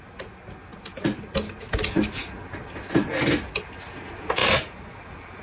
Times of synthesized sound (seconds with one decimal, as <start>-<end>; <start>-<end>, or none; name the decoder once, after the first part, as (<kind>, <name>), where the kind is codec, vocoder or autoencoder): 4.4-5.4 (vocoder, BigVGAN v2)